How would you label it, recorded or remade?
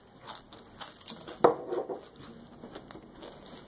recorded